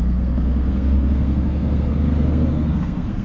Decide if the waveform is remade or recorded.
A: remade